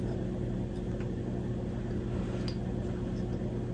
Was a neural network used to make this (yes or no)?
no